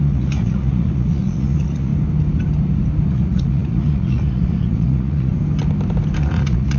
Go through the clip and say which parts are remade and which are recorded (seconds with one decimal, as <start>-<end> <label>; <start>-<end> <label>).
0.0-1.9 remade; 1.9-3.1 recorded; 3.1-5.3 remade; 5.3-6.2 recorded; 6.2-6.8 remade